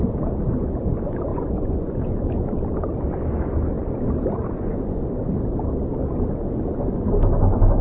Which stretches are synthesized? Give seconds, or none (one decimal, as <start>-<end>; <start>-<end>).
1.3-2.2; 4.4-5.0